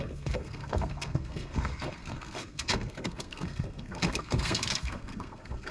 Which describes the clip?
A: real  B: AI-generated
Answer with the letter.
B